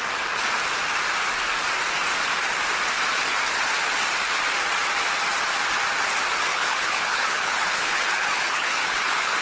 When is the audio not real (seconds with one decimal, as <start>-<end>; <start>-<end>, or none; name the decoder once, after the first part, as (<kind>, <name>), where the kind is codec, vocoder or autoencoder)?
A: 6.5-9.4 (codec, HILCodec)